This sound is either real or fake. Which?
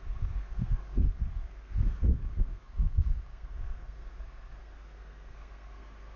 fake